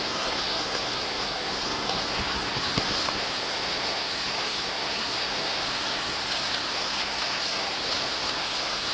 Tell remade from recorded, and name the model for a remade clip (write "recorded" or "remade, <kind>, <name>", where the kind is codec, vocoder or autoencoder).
remade, codec, SNAC